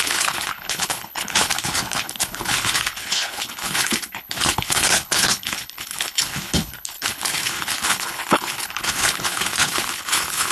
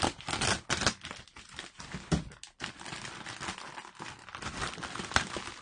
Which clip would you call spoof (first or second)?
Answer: first